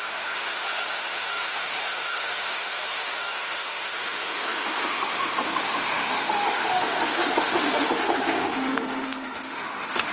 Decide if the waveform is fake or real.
fake